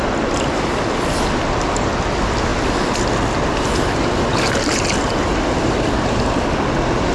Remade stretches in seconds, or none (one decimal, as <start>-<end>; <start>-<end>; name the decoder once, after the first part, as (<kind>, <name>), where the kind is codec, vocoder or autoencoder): none